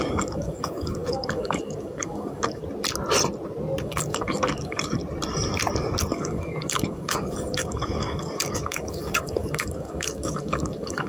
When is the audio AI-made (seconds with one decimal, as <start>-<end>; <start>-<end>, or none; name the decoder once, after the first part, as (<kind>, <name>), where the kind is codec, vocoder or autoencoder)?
0.0-2.6 (codec, DAC); 3.8-5.0; 6.1-11.1